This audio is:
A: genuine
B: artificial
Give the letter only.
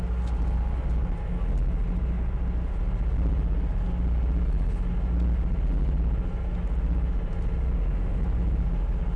A